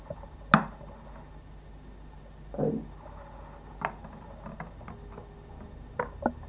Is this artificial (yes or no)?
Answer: no